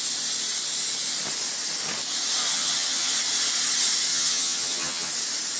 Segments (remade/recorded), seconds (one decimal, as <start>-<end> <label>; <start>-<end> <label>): 0.0-2.5 recorded; 2.5-3.1 remade; 3.1-4.1 recorded; 4.1-5.1 remade; 5.1-5.6 recorded